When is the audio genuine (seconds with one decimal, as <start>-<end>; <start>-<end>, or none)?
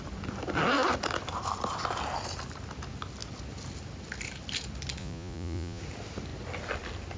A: 0.0-5.0; 5.8-7.2